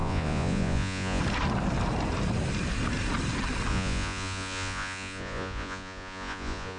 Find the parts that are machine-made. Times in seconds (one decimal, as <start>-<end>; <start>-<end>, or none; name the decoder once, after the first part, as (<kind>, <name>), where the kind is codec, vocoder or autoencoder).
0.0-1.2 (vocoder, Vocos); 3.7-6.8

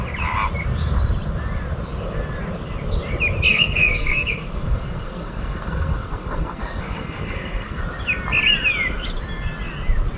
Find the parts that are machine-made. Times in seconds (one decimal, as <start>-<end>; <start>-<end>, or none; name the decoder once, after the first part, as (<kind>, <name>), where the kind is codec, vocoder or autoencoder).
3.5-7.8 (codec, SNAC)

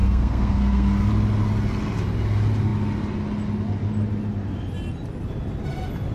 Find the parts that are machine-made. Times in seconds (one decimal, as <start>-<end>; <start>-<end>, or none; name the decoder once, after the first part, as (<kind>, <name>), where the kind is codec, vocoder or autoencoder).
0.0-1.1 (codec, SNAC)

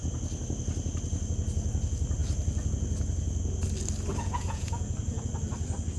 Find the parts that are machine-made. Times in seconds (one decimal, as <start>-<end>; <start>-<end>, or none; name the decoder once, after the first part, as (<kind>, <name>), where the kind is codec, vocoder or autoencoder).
4.1-5.2 (vocoder, Vocos)

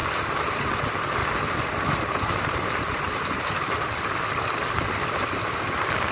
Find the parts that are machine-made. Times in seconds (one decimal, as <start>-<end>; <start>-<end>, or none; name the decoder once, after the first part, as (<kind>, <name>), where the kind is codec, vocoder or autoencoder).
0.0-0.7 (vocoder, BigVGAN v2); 1.2-3.6

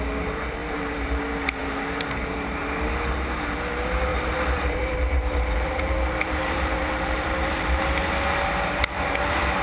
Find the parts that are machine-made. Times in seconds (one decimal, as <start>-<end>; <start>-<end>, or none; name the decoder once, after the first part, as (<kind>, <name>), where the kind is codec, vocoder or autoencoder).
0.6-1.2 (vocoder, BigVGAN v2); 4.1-7.8

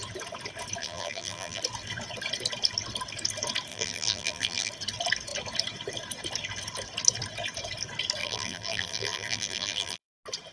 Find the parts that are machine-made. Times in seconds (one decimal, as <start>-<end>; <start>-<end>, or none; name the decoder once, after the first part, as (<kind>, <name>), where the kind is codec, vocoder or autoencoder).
0.8-1.6 (vocoder, BigVGAN v2); 3.7-4.7; 8.2-10.1

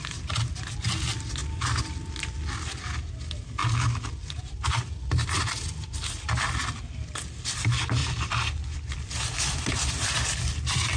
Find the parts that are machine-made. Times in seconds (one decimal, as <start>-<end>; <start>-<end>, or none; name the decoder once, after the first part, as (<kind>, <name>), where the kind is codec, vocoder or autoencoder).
8.0-11.0 (vocoder, BigVGAN v2)